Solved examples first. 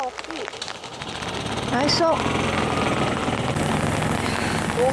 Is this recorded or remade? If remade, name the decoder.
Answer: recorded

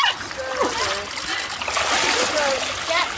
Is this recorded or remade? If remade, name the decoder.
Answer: recorded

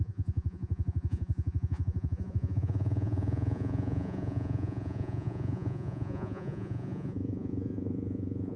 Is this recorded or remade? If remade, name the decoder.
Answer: remade, vocoder, Vocos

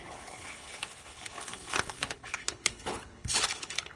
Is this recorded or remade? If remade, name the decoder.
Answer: remade, codec, HILCodec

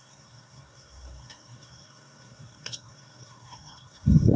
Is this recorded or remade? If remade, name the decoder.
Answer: remade, codec, SNAC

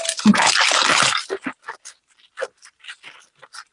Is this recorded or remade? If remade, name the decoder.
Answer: recorded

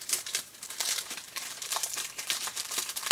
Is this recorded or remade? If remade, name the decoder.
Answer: remade, vocoder, BigVGAN v2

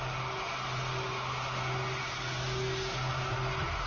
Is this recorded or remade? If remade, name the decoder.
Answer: recorded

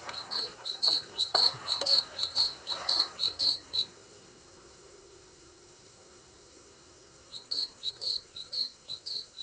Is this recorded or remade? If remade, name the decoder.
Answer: remade, codec, SNAC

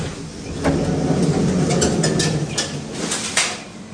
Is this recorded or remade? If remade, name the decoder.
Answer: recorded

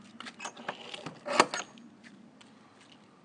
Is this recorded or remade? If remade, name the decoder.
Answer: recorded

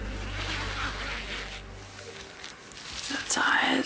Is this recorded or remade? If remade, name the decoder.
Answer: recorded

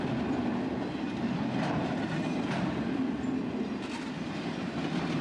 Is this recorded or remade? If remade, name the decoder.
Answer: recorded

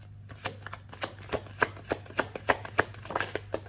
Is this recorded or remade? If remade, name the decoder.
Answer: recorded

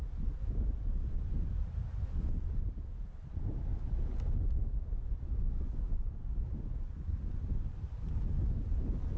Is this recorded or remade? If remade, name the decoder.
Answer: recorded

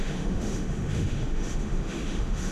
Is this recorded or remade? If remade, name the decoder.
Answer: remade, autoencoder, DAC-VAE